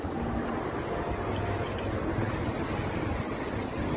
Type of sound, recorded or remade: recorded